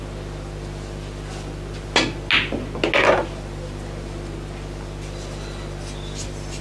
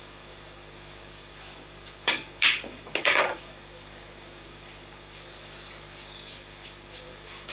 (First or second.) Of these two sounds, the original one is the first